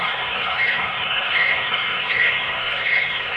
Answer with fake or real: fake